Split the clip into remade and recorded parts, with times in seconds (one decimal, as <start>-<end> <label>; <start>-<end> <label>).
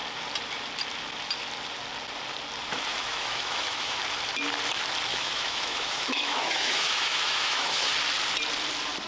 0.0-2.9 recorded; 2.9-4.0 remade; 4.0-5.1 recorded; 5.1-7.9 remade; 7.9-9.1 recorded